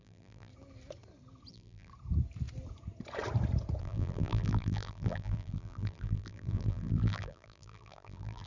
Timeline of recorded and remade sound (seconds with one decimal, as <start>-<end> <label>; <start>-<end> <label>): 0.0-0.5 remade; 0.5-1.5 recorded; 1.5-1.9 remade; 1.9-3.8 recorded; 3.8-8.5 remade